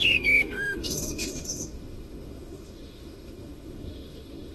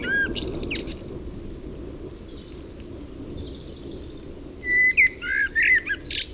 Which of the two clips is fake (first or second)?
first